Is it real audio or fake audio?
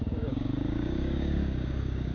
fake